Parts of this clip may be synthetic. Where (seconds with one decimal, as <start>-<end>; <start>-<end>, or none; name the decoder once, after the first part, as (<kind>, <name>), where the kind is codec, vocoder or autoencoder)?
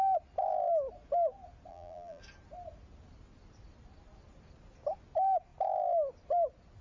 1.7-2.2 (vocoder, BigVGAN v2)